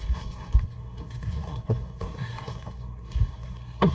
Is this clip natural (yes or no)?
no